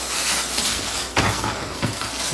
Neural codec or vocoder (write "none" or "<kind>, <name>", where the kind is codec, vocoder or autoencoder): codec, SNAC